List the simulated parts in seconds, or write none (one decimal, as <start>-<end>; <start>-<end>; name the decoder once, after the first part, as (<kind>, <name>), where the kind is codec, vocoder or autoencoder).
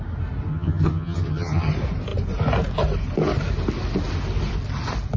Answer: 0.5-1.7 (vocoder, HiFi-GAN)